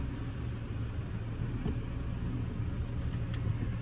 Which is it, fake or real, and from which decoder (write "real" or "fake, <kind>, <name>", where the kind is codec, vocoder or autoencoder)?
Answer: real